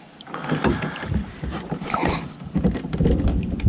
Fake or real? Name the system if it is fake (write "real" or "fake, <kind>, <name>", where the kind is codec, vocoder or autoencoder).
real